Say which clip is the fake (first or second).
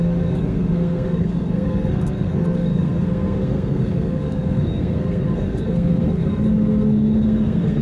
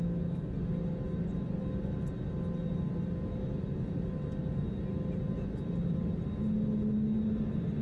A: first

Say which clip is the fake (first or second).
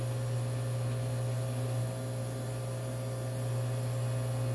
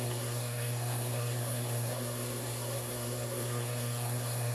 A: second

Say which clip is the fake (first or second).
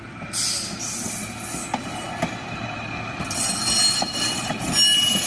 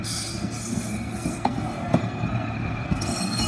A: second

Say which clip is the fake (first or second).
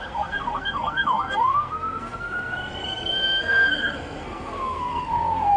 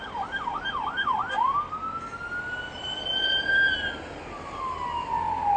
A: first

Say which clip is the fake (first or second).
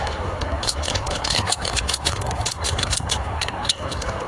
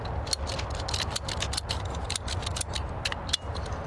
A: first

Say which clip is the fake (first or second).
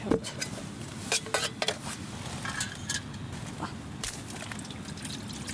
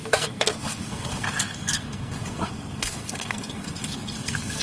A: second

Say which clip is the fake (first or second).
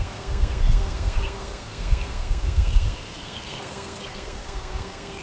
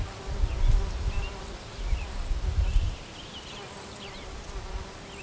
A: first